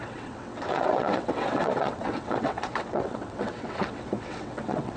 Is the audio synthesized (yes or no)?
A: yes